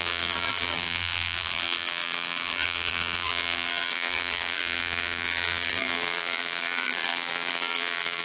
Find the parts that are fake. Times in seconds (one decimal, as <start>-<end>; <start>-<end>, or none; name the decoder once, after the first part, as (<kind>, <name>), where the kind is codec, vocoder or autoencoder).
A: 0.0-8.2 (vocoder, BigVGAN v2)